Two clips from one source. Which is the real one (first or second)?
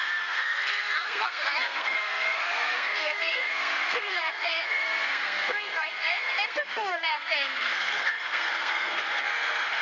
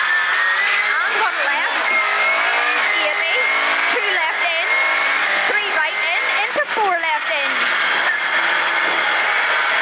second